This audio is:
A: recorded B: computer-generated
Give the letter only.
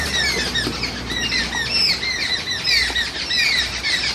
A